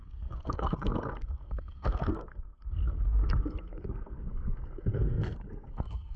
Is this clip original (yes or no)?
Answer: no